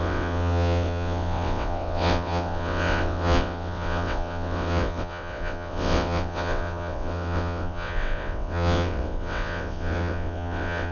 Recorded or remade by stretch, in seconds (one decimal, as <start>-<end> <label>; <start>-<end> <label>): 0.0-10.9 remade

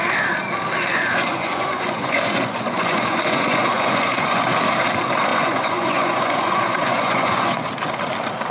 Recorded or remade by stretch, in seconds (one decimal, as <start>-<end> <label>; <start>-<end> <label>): 0.0-0.9 recorded; 0.9-4.5 remade; 4.5-5.3 recorded; 5.3-7.7 remade; 7.7-8.5 recorded